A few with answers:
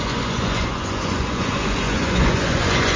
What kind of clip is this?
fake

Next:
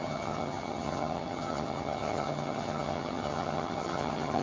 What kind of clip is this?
fake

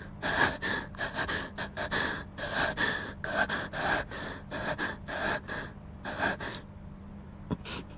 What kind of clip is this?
fake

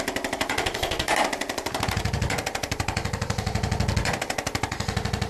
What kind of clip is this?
fake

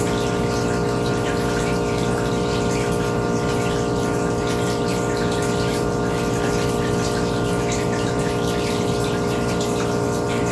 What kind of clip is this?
real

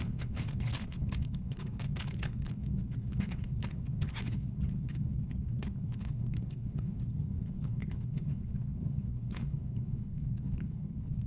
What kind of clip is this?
fake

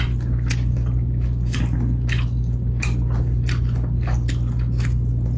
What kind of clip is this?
real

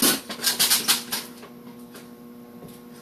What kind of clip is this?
real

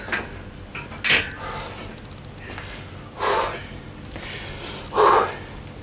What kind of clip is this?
real